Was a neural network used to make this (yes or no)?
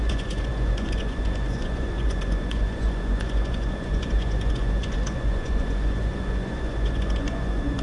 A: yes